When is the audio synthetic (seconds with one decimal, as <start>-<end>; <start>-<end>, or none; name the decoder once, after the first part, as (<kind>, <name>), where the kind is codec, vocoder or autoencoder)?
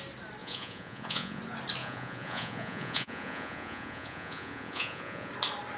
0.4-1.4 (vocoder, Vocos); 1.8-5.3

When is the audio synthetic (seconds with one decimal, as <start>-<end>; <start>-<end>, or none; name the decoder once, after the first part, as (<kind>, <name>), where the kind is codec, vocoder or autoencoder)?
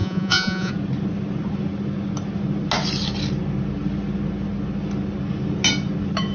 0.0-0.7 (vocoder, Vocos)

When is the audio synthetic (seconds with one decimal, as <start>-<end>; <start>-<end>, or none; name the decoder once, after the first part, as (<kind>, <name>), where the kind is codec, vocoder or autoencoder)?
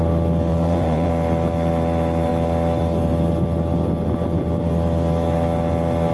0.5-1.1 (vocoder, Vocos)